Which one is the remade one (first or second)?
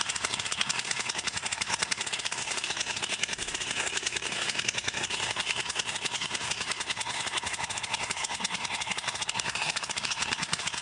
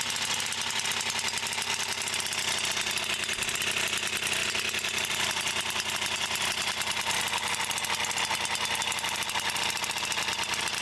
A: first